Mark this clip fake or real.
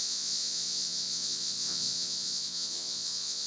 fake